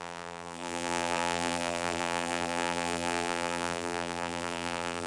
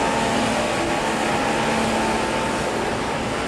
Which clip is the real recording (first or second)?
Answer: second